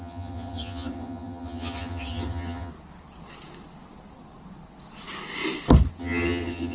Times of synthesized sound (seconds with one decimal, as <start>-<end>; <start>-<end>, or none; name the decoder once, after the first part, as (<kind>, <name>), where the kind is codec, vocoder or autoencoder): 0.0-2.7 (vocoder, HiFi-GAN); 6.0-6.7